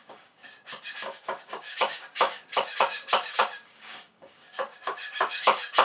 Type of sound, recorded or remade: remade